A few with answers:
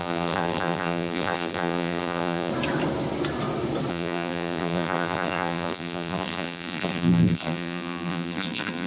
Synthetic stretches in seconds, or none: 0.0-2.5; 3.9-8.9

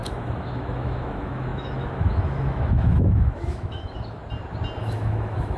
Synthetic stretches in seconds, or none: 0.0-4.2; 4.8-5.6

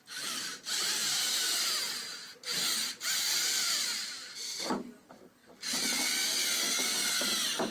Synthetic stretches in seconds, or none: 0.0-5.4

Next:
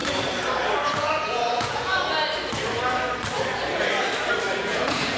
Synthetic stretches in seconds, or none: 1.2-1.9; 4.6-5.2

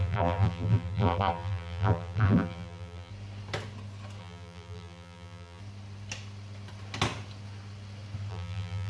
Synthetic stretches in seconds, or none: 0.0-3.1; 4.2-5.6; 8.3-8.9

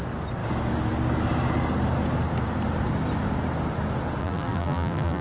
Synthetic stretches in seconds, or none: 4.2-5.2